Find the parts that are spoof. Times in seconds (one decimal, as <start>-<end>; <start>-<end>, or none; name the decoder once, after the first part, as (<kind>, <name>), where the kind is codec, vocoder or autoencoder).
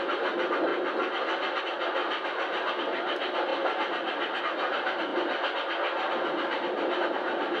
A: 0.0-0.7 (vocoder, BigVGAN v2); 1.6-5.1; 7.0-7.6